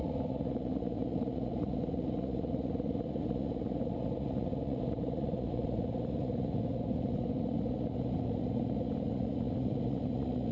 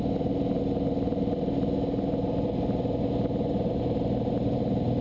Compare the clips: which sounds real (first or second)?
second